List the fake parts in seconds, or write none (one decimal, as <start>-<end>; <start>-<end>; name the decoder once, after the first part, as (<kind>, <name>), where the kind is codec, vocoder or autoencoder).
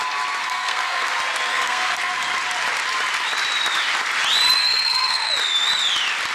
0.4-1.1 (codec, SNAC); 1.5-2.1; 4.6-5.3